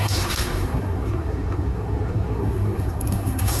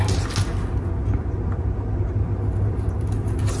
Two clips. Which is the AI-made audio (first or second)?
first